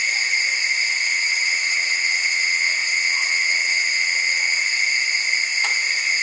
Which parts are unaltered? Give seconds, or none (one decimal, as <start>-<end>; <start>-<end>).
0.0-0.9; 4.6-6.2